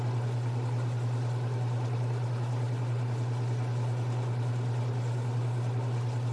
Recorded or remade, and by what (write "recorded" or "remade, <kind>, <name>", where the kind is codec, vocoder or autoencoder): recorded